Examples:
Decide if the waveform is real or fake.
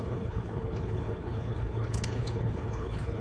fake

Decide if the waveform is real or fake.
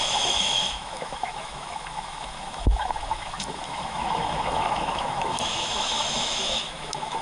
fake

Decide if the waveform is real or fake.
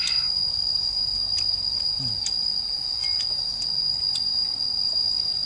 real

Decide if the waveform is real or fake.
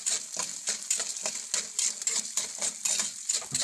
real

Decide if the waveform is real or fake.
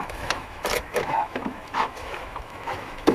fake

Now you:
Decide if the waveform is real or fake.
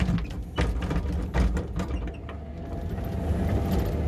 real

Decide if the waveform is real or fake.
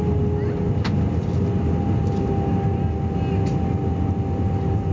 real